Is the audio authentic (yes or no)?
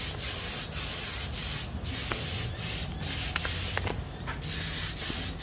yes